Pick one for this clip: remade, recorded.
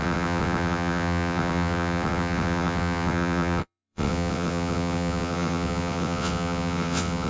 remade